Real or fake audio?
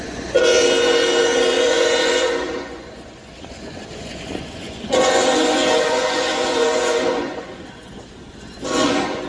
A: fake